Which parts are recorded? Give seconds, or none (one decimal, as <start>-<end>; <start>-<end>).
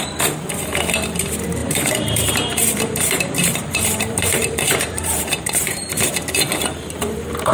0.0-1.6; 6.1-7.5